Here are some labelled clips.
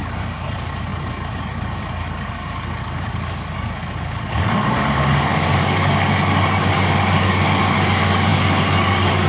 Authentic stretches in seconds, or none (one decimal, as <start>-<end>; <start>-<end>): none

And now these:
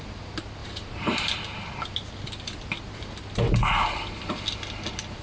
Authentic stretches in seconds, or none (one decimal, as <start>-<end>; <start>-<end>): 0.0-0.6; 1.3-5.2

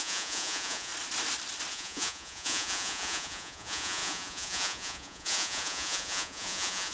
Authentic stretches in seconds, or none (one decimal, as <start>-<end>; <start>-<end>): 0.9-1.7

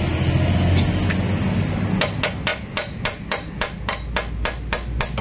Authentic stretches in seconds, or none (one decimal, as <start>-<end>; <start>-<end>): 0.0-5.2

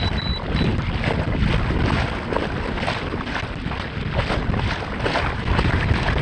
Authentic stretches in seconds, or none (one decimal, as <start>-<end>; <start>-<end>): 0.0-6.2

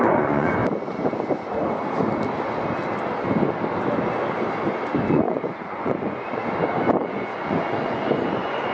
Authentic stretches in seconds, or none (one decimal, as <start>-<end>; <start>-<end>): 0.6-5.1; 6.4-7.0